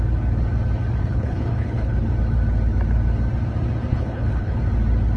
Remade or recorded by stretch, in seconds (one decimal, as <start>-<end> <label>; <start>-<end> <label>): 0.0-1.0 recorded; 1.0-2.1 remade; 2.1-3.9 recorded; 3.9-4.6 remade; 4.6-5.2 recorded

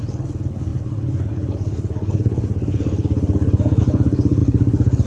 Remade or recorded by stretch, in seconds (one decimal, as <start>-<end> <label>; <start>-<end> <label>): 0.0-5.1 remade